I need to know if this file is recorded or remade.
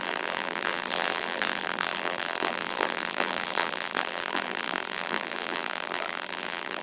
remade